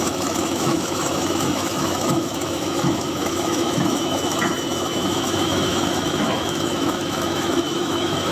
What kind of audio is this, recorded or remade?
remade